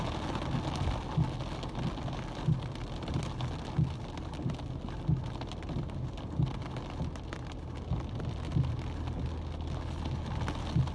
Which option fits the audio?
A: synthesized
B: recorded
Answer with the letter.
B